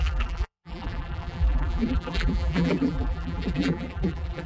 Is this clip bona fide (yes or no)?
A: no